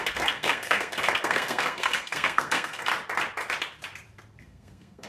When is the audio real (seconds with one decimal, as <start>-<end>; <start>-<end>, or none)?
2.9-4.4